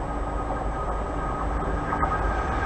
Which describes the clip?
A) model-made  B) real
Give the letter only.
B